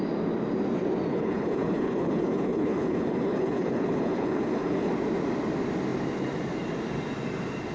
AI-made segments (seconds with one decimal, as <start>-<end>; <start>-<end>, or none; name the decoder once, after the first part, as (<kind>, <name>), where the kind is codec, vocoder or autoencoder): 1.1-4.9 (codec, HILCodec)